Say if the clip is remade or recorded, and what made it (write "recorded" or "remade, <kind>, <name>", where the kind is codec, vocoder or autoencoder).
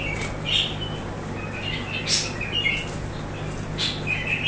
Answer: recorded